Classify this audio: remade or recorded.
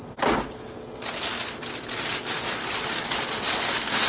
recorded